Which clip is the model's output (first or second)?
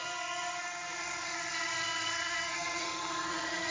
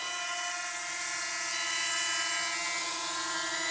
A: first